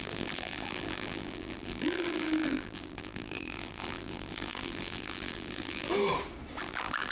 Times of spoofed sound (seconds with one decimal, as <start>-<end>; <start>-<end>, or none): 0.0-5.9; 6.6-7.1

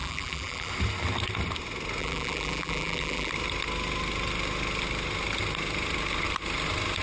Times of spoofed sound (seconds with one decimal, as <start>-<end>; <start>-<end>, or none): 0.0-0.7; 2.0-3.3

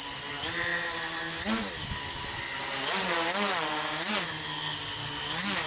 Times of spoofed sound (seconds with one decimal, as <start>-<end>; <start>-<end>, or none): none

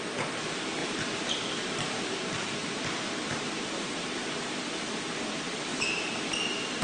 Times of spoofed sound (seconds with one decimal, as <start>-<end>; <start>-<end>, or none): 0.8-4.2; 5.7-6.2

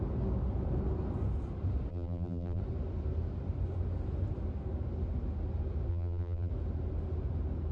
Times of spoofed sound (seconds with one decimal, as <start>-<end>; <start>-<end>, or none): 1.9-2.6; 5.9-6.5

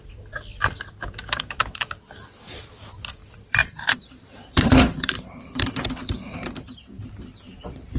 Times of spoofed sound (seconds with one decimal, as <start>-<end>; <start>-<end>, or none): 3.2-5.7

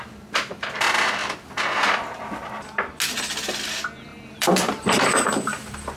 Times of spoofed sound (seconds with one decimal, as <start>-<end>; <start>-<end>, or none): 4.1-6.0